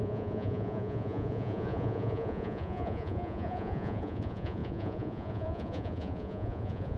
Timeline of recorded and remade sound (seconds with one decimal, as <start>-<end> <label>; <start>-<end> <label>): 0.0-7.0 remade